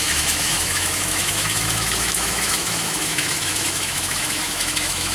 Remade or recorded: remade